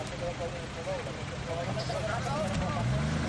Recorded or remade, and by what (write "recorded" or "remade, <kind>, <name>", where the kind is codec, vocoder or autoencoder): recorded